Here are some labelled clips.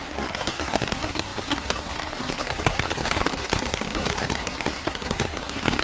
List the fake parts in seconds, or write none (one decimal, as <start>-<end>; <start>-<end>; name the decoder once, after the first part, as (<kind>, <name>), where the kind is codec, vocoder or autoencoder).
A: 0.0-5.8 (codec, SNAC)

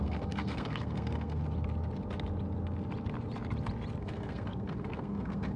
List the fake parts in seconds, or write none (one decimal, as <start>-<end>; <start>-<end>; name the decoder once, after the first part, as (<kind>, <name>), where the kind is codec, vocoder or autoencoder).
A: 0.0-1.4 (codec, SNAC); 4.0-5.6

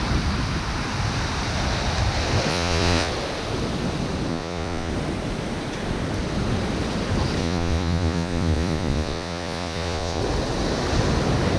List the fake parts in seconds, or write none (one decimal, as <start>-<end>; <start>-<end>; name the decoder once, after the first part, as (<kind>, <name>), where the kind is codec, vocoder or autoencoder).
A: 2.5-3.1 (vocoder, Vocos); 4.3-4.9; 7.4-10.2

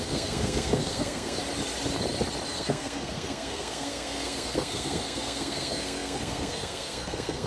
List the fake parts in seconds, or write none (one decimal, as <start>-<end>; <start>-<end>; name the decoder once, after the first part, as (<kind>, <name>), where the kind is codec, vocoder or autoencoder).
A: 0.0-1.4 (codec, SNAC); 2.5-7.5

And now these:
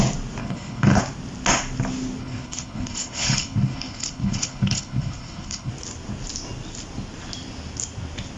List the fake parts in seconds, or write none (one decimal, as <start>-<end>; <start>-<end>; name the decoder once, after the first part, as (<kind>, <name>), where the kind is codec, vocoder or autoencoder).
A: 0.4-1.0 (codec, HILCodec); 2.2-5.7

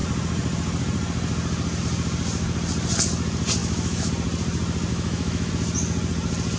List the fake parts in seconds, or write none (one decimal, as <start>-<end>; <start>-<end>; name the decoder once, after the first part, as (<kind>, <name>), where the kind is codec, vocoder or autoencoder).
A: 3.6-4.1 (autoencoder, DAC-VAE); 4.9-5.5